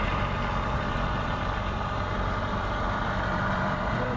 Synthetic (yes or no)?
yes